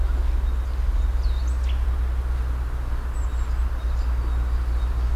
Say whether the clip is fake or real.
real